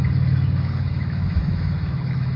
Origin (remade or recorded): remade